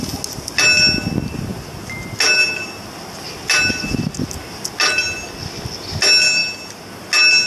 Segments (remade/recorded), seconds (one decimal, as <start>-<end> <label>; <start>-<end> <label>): 0.0-7.5 recorded

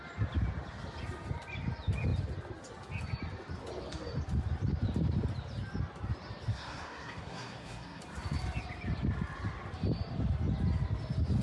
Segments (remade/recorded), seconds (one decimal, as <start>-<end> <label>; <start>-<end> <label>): 0.0-6.5 recorded; 6.5-8.0 remade; 8.0-11.4 recorded